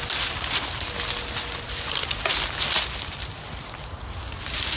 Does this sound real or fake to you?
real